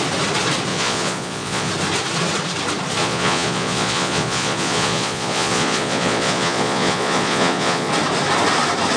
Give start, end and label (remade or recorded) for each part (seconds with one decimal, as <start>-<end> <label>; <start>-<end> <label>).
0.0-0.7 recorded; 0.7-1.7 remade; 1.7-3.0 recorded; 3.0-7.9 remade; 7.9-9.0 recorded